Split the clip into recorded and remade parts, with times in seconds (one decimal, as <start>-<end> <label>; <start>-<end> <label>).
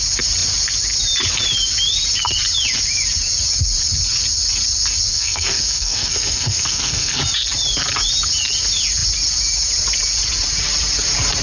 0.0-5.1 recorded; 5.1-7.2 remade; 7.2-11.4 recorded